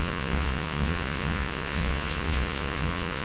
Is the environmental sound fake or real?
fake